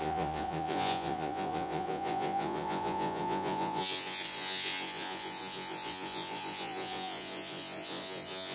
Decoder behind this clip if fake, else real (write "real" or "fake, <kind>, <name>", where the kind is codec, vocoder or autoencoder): fake, vocoder, Vocos